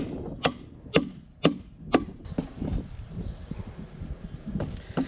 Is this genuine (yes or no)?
yes